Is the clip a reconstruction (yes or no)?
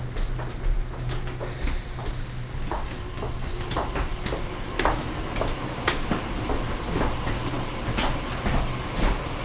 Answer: no